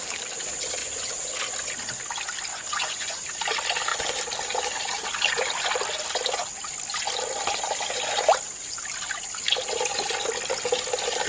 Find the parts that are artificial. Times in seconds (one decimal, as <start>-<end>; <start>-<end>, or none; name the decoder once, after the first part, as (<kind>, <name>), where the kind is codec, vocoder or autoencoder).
0.8-1.3 (vocoder, Vocos); 2.5-3.2